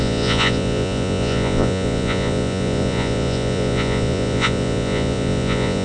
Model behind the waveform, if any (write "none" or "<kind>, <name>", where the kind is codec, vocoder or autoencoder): vocoder, Vocos